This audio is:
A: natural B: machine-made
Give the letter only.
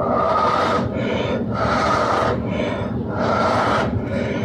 B